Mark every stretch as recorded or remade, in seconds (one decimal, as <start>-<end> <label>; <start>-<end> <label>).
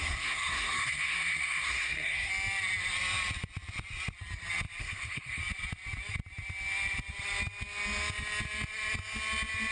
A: 0.0-2.3 remade; 2.3-4.8 recorded; 4.8-5.4 remade; 5.4-9.7 recorded